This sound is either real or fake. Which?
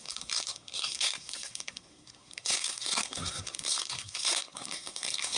fake